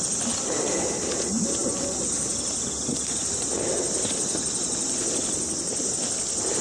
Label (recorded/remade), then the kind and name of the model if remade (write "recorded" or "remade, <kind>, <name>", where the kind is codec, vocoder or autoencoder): recorded